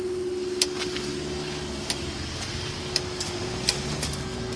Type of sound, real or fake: real